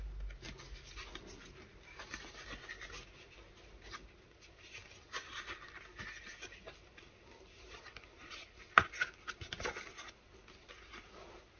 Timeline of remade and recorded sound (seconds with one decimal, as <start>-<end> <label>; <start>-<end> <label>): 0.0-11.6 recorded